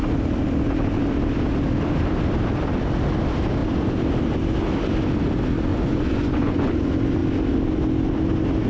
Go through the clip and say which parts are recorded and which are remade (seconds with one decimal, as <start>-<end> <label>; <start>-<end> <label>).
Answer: 0.0-5.7 recorded; 5.7-6.7 remade; 6.7-8.7 recorded